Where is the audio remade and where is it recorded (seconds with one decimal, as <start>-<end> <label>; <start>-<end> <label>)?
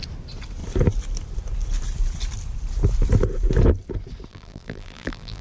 0.0-4.3 recorded; 4.3-5.4 remade